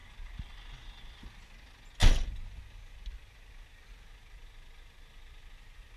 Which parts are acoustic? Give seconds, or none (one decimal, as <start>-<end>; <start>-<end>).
1.2-2.0; 2.6-6.0

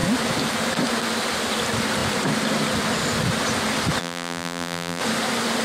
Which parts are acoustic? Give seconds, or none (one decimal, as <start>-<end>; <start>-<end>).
0.0-4.0; 5.0-5.6